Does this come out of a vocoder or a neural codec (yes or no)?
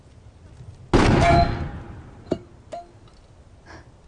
no